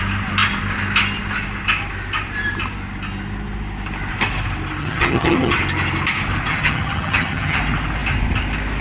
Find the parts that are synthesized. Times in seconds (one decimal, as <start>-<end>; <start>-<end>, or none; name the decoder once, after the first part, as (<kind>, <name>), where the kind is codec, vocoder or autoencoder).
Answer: 4.8-5.6 (vocoder, HiFi-GAN); 6.5-7.6